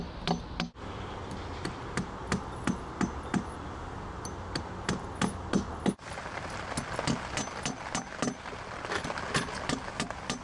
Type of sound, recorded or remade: recorded